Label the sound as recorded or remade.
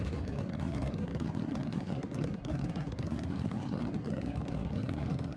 remade